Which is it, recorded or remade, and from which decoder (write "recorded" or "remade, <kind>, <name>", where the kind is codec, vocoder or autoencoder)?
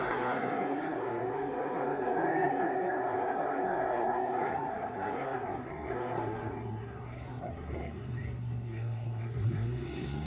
remade, codec, SNAC